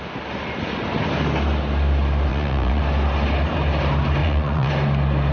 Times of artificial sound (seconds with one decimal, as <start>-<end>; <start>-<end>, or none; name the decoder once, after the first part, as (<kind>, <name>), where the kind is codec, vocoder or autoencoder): 2.3-2.8 (vocoder, Vocos); 4.2-4.7